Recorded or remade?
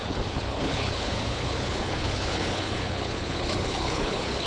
remade